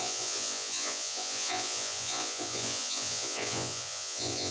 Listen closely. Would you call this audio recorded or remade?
remade